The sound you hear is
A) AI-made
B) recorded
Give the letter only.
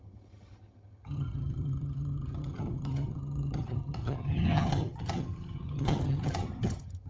A